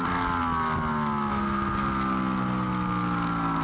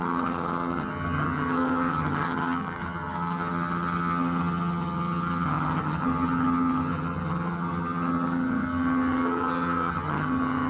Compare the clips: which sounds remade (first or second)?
second